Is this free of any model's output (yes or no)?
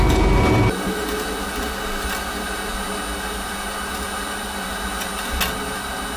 yes